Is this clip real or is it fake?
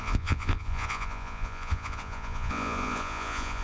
fake